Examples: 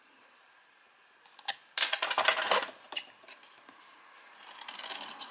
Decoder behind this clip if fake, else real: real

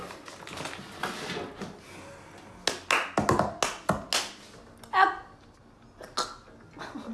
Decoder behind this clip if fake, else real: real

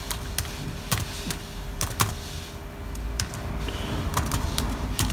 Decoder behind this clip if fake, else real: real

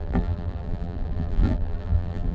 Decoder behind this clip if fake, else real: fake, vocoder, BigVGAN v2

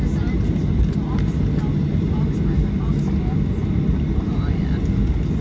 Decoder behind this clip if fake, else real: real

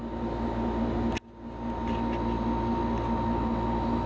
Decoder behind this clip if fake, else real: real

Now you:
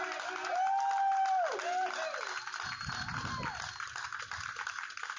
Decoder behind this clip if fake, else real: real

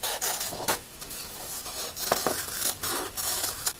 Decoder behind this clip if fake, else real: fake, autoencoder, DAC-VAE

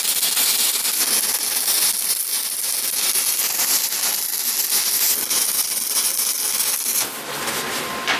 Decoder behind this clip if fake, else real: real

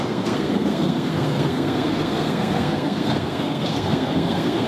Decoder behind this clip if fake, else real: fake, codec, SNAC